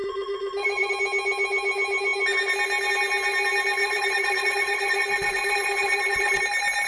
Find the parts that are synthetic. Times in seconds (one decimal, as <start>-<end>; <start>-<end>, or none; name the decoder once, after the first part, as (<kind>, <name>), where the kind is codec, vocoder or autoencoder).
0.0-0.9 (vocoder, Vocos); 3.8-6.4